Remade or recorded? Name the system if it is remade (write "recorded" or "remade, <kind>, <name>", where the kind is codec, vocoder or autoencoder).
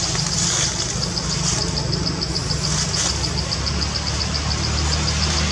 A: recorded